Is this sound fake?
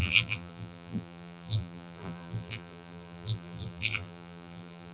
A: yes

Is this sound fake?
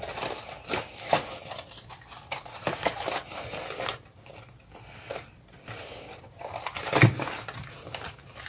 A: no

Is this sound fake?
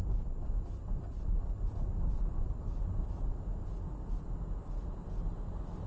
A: no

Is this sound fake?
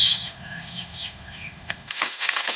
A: yes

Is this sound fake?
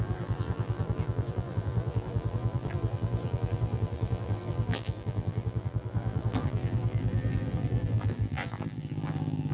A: yes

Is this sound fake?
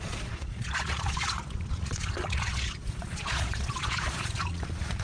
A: yes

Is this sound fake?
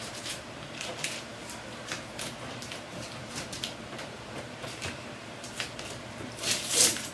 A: yes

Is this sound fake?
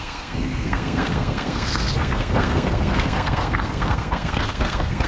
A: yes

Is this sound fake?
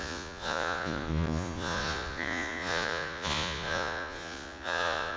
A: yes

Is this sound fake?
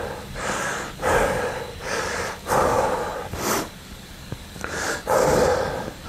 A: yes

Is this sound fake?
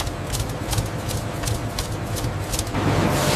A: no